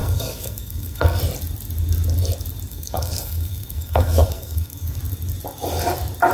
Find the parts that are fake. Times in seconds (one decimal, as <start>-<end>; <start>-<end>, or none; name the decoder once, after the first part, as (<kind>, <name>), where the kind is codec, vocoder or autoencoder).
0.0-1.2 (codec, SNAC); 2.7-5.0